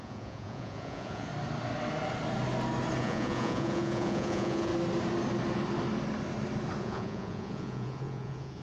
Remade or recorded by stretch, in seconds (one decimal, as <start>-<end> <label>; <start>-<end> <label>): 0.0-1.3 remade; 1.3-3.0 recorded; 3.0-4.7 remade; 4.7-6.8 recorded; 6.8-8.6 remade